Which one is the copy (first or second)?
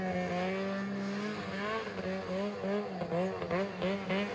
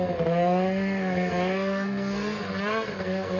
second